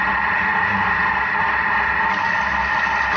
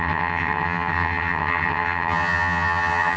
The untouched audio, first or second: first